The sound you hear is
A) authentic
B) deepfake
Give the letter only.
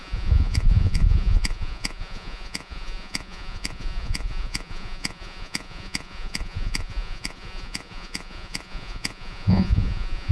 B